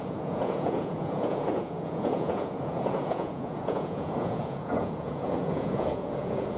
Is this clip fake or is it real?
fake